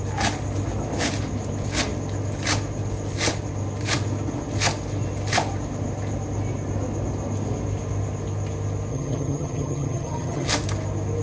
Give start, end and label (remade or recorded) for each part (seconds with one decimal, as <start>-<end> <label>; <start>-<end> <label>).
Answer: 0.0-8.9 recorded; 8.9-10.5 remade; 10.5-11.2 recorded